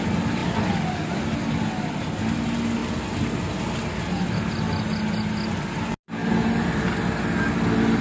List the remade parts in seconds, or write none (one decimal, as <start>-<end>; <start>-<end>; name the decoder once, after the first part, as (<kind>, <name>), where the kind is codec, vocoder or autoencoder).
none